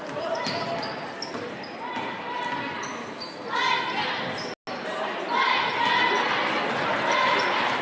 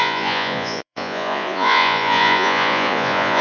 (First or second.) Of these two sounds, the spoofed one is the second